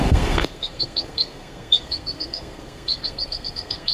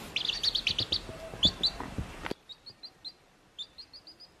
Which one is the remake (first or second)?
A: first